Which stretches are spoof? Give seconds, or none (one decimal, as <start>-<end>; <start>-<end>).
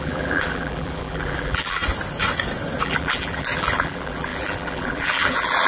0.0-1.8; 2.8-5.7